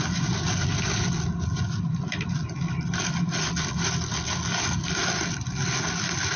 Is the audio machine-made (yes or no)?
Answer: no